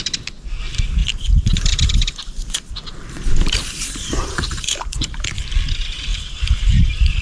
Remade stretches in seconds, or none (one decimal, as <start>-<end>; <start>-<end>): 1.0-5.3; 6.1-7.2